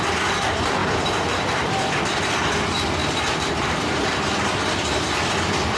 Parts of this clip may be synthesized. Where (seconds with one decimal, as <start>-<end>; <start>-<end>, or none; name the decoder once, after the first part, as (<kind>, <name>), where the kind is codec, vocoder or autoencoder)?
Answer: 0.8-2.0 (vocoder, BigVGAN v2); 3.0-4.4